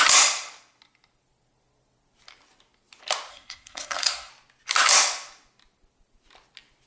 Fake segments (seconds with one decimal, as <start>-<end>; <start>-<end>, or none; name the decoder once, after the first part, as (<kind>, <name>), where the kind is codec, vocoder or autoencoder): 3.3-4.3 (codec, SNAC)

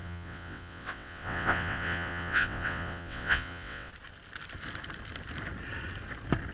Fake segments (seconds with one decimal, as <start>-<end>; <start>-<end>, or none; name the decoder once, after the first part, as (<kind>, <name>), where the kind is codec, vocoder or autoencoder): 0.0-3.9 (vocoder, WaveNeXt)

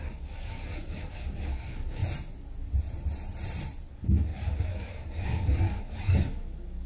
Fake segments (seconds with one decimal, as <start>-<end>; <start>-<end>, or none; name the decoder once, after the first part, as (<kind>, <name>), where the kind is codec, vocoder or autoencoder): 0.0-2.0 (codec, DAC); 3.9-6.9